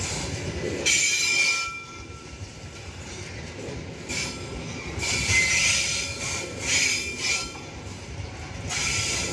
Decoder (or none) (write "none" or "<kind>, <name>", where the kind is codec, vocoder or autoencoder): none